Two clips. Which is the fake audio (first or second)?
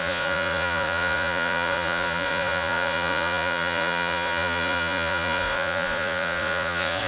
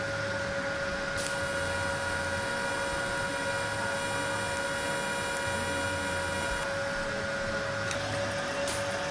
first